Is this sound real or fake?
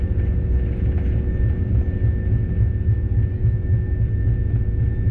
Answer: real